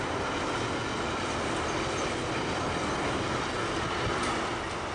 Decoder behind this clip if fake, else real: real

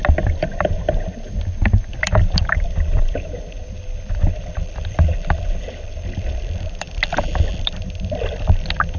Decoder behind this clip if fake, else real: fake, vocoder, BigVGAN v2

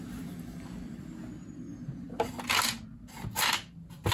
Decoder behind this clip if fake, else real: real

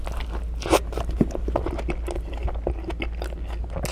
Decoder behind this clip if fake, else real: real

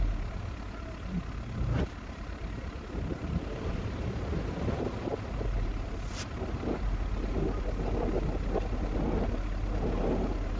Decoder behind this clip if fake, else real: real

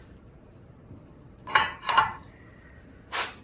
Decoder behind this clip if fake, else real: real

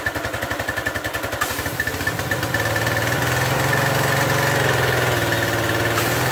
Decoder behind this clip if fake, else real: real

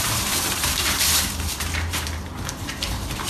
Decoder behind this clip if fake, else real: fake, vocoder, BigVGAN v2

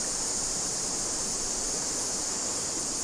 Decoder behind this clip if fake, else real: real